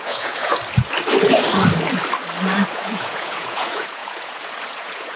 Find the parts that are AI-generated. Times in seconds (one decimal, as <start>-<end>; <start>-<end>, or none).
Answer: 0.0-0.5; 2.7-5.2